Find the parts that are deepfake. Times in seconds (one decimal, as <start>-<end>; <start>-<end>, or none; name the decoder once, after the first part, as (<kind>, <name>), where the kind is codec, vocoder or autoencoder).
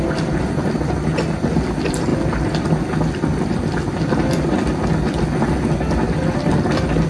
none